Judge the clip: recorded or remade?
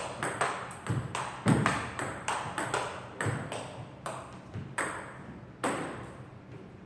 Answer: remade